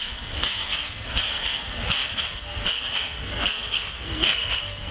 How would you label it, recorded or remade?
remade